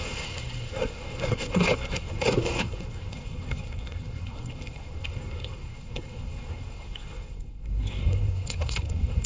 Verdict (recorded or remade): remade